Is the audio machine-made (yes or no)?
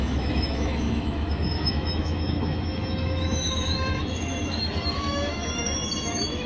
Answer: yes